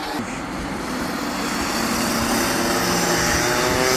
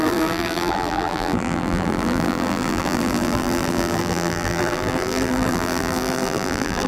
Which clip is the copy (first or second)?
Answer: second